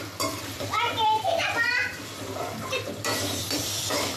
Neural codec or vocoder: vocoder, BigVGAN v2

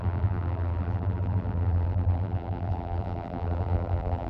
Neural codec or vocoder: vocoder, BigVGAN v2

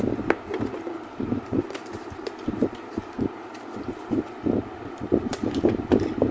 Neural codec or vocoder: vocoder, BigVGAN v2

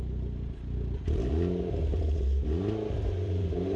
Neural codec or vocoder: vocoder, BigVGAN v2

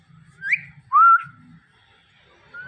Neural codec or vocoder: none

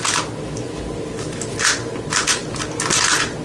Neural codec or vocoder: none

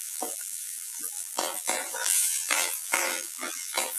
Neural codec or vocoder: vocoder, BigVGAN v2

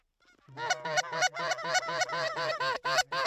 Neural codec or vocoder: none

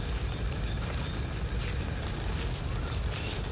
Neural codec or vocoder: none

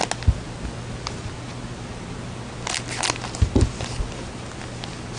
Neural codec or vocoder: none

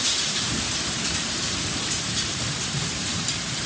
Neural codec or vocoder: vocoder, BigVGAN v2